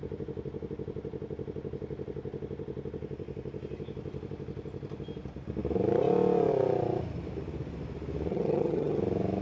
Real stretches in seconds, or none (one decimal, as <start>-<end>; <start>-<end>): 0.0-8.3; 9.0-9.4